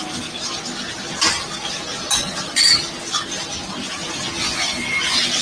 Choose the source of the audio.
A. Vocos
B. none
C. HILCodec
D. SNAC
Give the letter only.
B